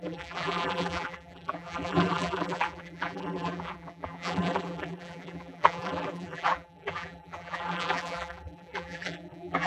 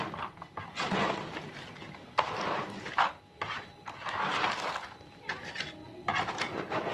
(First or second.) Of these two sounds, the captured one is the second